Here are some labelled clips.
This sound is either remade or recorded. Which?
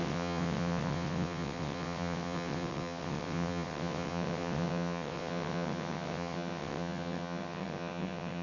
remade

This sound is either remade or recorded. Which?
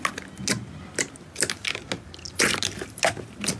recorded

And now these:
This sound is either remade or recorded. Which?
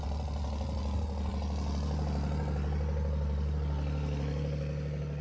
recorded